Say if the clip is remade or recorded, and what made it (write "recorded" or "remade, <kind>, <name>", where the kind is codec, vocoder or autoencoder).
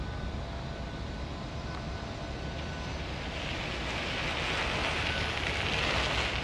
recorded